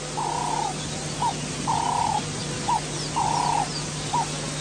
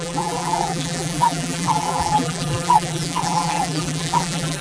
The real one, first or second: first